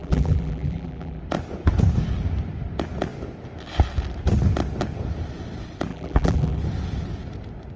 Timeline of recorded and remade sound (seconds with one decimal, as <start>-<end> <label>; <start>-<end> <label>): 0.0-1.2 remade; 1.2-5.9 recorded; 5.9-6.6 remade; 6.6-7.8 recorded